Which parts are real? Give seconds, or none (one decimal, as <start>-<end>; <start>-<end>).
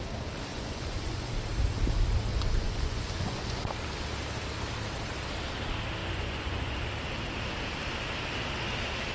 0.0-0.5; 1.3-2.3; 3.6-6.0; 6.9-9.1